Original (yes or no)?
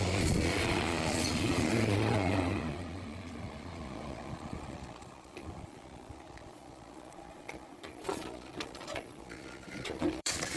no